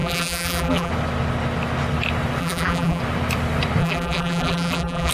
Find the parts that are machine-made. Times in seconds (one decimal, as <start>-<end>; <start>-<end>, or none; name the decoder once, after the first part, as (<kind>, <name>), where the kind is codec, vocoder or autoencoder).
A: 0.0-0.9 (vocoder, BigVGAN v2); 2.4-3.0; 3.8-5.1